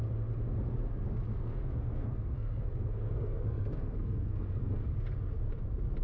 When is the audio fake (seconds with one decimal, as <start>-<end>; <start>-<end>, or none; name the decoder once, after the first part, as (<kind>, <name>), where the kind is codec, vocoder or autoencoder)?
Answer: 1.3-4.9 (codec, SNAC)